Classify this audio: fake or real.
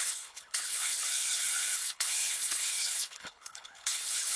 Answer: fake